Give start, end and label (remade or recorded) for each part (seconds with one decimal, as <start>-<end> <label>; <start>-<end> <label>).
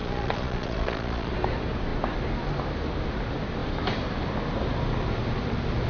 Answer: 0.0-1.3 remade; 1.3-5.9 recorded